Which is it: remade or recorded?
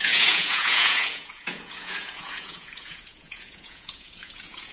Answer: remade